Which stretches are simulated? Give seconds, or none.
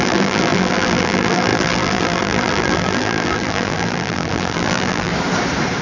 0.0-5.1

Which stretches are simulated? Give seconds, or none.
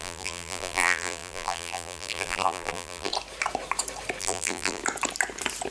0.0-3.1; 4.2-4.8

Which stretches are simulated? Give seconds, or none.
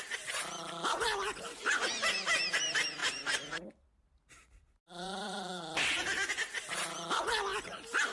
3.0-6.3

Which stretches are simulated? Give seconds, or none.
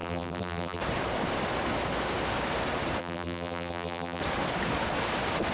0.0-0.8; 3.0-4.2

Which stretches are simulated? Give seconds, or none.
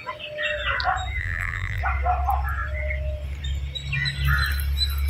1.2-1.8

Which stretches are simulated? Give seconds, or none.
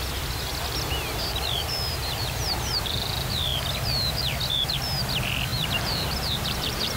2.0-3.1; 5.5-7.0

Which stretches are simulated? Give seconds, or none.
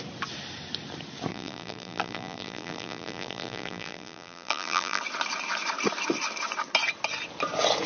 1.3-5.0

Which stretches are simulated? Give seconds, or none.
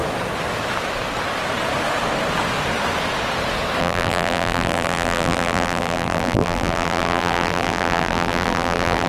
3.8-9.1